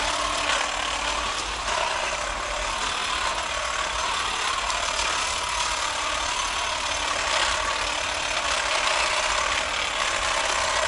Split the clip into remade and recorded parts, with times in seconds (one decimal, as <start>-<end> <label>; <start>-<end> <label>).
0.0-10.9 recorded